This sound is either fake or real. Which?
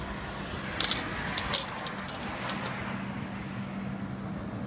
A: real